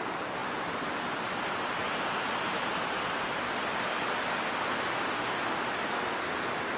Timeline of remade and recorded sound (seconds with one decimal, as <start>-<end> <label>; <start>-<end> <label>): 0.0-6.8 recorded